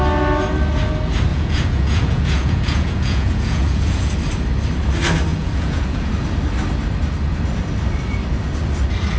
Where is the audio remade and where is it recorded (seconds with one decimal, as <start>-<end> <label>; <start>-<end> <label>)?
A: 0.0-1.3 recorded; 1.3-4.1 remade; 4.1-5.3 recorded; 5.3-6.1 remade; 6.1-9.2 recorded